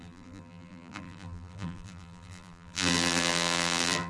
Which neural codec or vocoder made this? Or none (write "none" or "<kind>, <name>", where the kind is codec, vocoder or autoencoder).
vocoder, BigVGAN v2